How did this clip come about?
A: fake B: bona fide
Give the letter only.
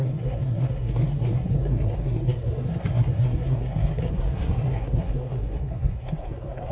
A